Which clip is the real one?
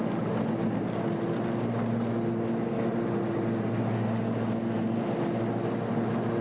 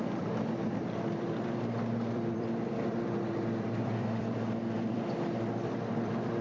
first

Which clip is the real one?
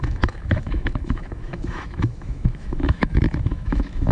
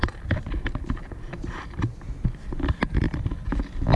second